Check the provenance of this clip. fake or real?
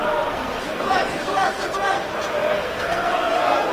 fake